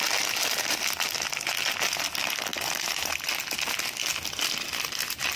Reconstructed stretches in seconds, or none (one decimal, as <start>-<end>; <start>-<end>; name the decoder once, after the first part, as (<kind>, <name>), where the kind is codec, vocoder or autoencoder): none